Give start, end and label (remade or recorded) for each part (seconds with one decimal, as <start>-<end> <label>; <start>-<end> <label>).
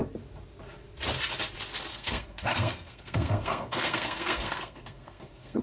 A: 0.0-1.9 recorded; 1.9-5.6 remade